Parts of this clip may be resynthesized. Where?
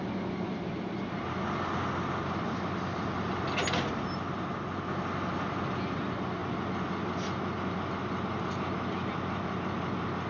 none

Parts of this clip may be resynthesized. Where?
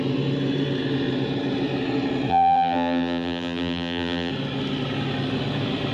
2.3-4.3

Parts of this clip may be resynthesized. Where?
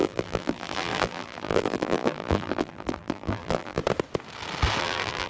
0.0-3.8; 4.8-5.3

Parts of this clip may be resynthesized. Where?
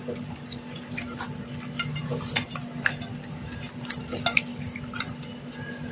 2.1-3.9; 4.5-5.5